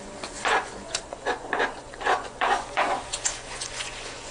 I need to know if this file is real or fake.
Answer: fake